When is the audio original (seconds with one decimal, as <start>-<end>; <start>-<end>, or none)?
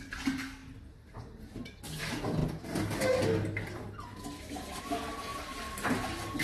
0.0-6.4